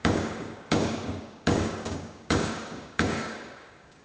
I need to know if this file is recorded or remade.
remade